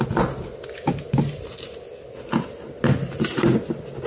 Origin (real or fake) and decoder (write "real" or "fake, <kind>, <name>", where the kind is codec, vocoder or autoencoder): real